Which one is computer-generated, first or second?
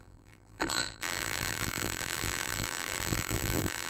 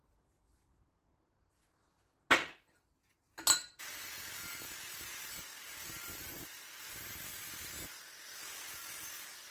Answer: first